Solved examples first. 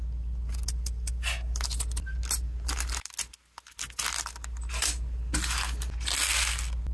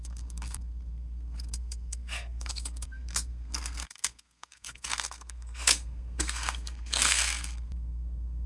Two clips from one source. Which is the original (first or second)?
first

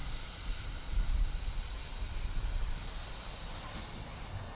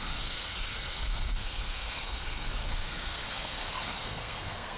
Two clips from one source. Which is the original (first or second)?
first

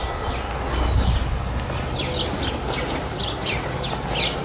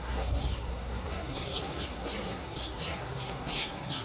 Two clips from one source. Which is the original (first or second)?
first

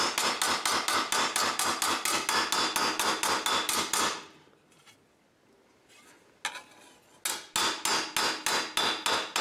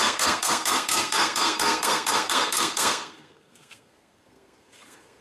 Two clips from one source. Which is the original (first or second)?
first